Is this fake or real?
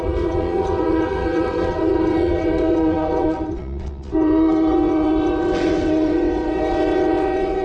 fake